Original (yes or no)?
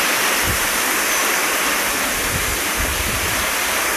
yes